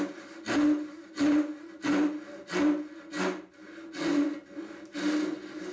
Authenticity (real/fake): real